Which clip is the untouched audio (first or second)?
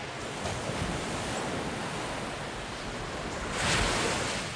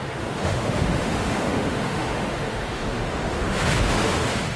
first